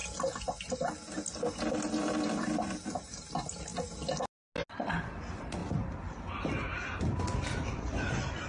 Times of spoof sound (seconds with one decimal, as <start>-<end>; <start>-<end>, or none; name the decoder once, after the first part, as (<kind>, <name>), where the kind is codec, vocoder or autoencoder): 1.7-3.7 (vocoder, BigVGAN v2); 5.0-5.6; 7.0-8.5